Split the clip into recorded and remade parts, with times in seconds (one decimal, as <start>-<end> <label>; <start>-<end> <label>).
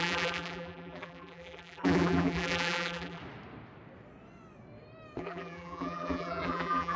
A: 0.0-3.2 remade; 3.2-5.2 recorded; 5.2-7.0 remade